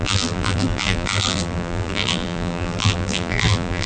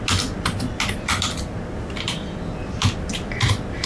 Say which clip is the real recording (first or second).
second